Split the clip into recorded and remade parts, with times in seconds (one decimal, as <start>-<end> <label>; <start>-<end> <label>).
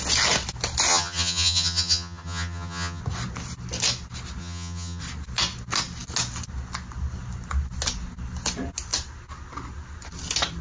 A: 0.0-0.9 recorded; 0.9-3.0 remade; 3.0-4.4 recorded; 4.4-5.0 remade; 5.0-10.6 recorded